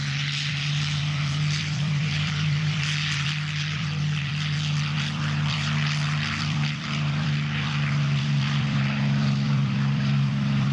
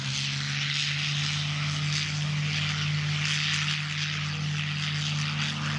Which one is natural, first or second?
second